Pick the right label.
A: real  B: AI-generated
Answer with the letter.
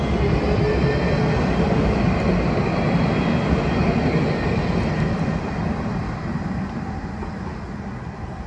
A